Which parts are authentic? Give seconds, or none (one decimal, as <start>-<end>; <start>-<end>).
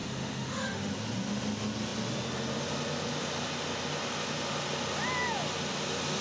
0.9-6.2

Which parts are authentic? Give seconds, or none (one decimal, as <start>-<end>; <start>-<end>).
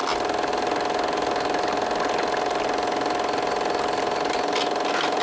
0.0-5.2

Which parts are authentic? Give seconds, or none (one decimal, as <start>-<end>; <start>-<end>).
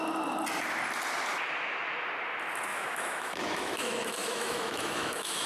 0.0-2.7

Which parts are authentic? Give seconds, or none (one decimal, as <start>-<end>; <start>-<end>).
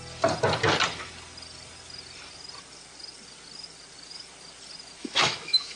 0.0-5.0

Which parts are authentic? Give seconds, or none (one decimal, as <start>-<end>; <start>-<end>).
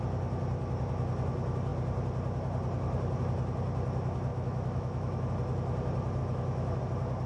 0.0-4.3; 5.3-6.2; 6.8-7.3